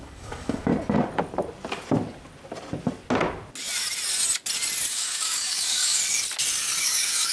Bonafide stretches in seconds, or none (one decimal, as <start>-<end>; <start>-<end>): 0.7-4.9; 6.0-6.8